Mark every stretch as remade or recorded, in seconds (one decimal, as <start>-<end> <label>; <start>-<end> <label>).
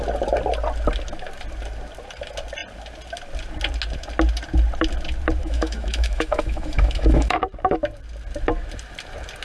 0.0-5.4 recorded; 5.4-7.4 remade; 7.4-9.4 recorded